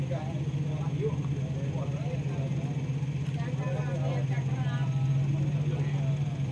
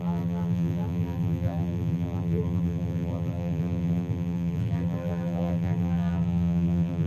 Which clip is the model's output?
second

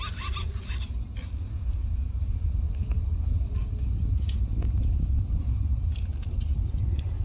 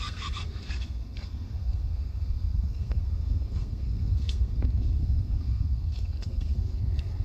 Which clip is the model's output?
second